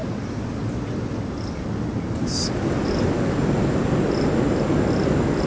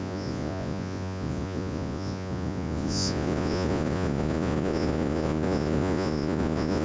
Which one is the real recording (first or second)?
first